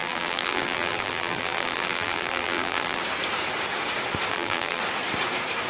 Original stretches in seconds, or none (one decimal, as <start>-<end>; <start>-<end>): 3.0-4.3; 4.8-5.7

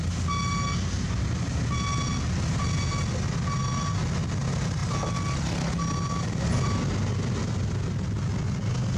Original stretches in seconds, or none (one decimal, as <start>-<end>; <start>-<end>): 0.0-9.0

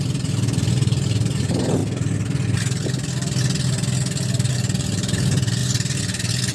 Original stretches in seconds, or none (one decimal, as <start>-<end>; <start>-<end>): 1.8-4.5

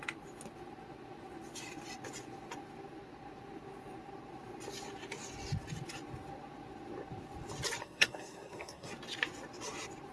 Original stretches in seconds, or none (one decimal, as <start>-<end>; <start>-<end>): 0.0-7.8; 8.9-10.1